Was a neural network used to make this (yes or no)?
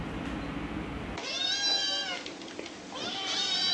no